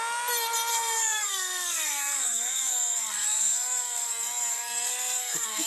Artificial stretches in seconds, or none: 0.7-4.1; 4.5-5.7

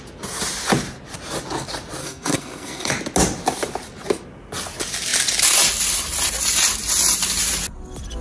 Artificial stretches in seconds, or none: 2.0-2.9

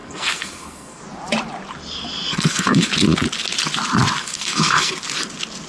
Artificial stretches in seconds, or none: 0.0-1.0; 2.3-2.9; 4.2-4.9

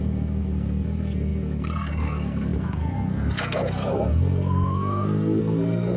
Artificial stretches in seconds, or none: 0.0-6.0

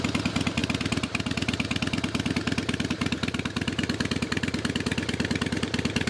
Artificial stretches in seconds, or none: none

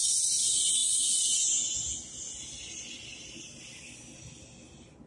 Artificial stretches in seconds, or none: none

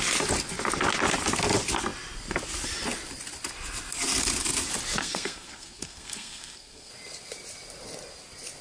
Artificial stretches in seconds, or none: 5.0-6.9

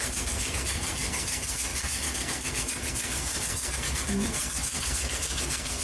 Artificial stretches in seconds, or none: 0.0-5.8